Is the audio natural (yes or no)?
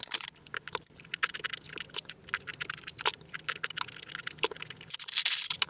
yes